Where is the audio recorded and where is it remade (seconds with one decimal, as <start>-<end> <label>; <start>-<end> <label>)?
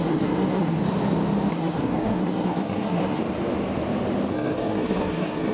0.0-0.8 remade; 0.8-1.5 recorded; 1.5-3.2 remade; 3.2-4.3 recorded; 4.3-5.5 remade